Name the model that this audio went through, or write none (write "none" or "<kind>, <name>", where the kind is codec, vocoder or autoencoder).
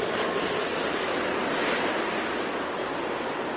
none